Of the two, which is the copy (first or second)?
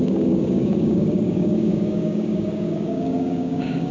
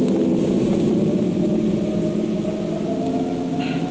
first